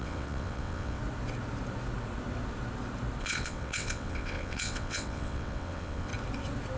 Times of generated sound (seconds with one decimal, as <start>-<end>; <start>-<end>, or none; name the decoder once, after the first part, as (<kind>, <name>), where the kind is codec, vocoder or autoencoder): 0.0-1.0 (vocoder, WaveNeXt); 3.2-6.1

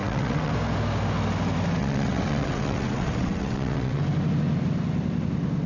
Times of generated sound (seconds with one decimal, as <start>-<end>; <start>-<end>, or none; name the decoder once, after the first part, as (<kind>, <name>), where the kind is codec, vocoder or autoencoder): 0.0-0.5 (vocoder, WaveNeXt); 1.8-4.0

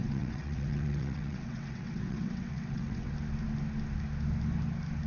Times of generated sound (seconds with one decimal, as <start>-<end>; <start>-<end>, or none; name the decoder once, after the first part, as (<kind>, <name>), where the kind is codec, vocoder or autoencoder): 0.0-3.1 (vocoder, WaveNeXt)

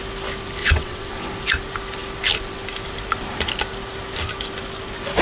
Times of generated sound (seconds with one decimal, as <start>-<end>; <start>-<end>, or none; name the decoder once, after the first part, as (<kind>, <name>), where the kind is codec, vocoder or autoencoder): 0.6-1.1 (vocoder, WaveNeXt)

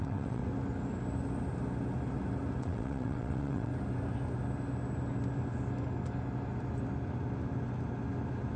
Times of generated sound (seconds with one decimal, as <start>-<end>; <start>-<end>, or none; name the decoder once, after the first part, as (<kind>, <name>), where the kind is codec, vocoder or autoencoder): 0.0-0.4 (vocoder, WaveNeXt); 2.6-3.7

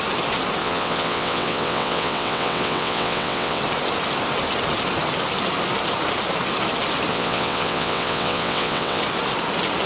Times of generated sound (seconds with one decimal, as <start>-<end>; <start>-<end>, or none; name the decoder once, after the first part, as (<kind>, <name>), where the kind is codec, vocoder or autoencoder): 0.6-3.6 (vocoder, WaveNeXt); 7.1-9.0

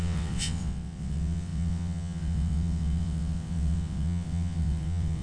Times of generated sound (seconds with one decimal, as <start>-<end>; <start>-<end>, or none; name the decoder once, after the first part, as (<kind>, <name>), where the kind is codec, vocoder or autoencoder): 0.0-5.2 (vocoder, WaveNeXt)

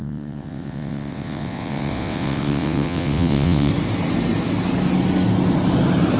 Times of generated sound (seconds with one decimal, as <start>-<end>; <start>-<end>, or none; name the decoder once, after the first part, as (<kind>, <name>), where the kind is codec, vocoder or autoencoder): 0.0-3.7 (vocoder, WaveNeXt)